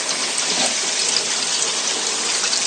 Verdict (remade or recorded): recorded